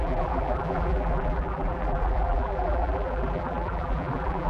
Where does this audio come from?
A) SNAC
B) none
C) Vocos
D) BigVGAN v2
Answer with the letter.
D